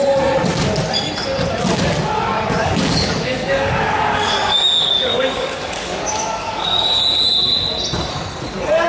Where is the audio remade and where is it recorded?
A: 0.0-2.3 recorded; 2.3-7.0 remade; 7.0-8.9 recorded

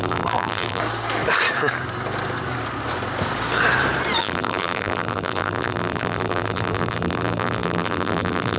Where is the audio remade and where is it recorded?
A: 0.0-0.8 remade; 0.8-4.2 recorded; 4.2-8.6 remade

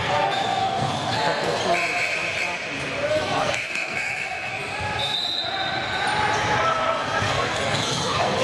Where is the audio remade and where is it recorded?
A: 0.0-1.6 remade; 1.6-3.1 recorded; 3.1-4.5 remade; 4.5-6.7 recorded; 6.7-8.4 remade